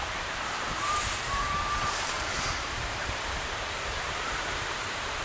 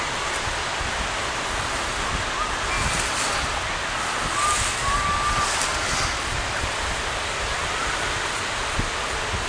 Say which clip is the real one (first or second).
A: second